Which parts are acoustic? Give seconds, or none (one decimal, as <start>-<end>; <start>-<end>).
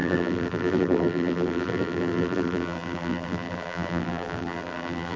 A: none